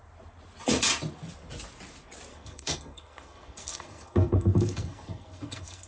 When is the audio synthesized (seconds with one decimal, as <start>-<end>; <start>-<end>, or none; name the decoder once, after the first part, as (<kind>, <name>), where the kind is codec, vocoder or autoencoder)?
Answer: 2.3-5.9 (codec, SNAC)